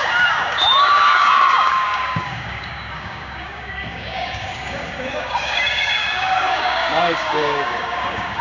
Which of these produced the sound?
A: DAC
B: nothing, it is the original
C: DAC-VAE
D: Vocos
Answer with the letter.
A